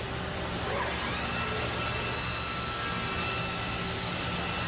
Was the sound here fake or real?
real